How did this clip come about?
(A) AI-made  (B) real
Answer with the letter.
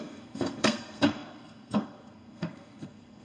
A